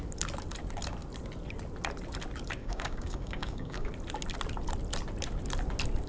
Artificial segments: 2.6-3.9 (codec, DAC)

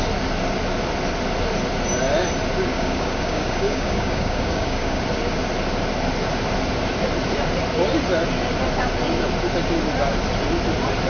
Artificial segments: 2.7-5.0 (codec, DAC)

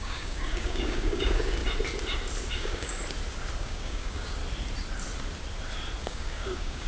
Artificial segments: 0.0-1.6 (codec, DAC); 2.5-3.0; 3.6-4.4; 6.0-6.9

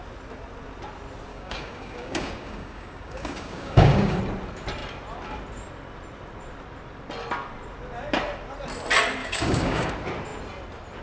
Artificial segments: 1.3-4.2 (codec, DAC); 9.2-9.9

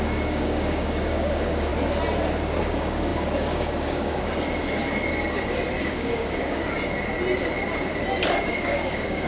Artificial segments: 0.0-1.7 (codec, DAC); 2.6-5.1; 5.8-6.6; 8.5-9.3

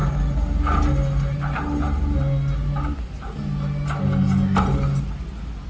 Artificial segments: none